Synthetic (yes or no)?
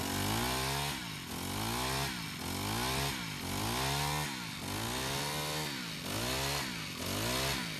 no